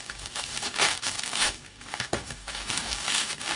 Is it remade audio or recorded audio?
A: remade